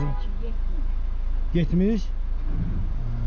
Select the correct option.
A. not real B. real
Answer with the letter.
B